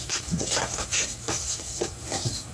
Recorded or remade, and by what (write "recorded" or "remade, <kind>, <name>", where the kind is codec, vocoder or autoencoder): remade, codec, SNAC